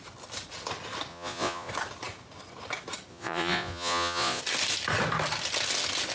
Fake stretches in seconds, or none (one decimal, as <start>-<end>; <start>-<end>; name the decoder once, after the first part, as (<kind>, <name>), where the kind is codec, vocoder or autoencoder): 1.1-1.7 (vocoder, Vocos); 3.1-4.4